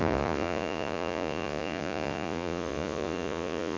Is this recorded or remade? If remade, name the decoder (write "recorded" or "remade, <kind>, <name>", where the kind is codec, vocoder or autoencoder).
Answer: remade, vocoder, Vocos